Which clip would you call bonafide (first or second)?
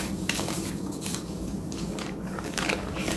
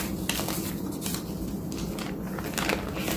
second